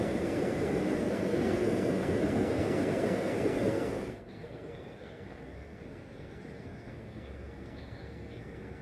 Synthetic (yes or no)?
yes